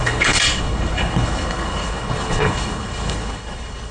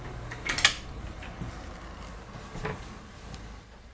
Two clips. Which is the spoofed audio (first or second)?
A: first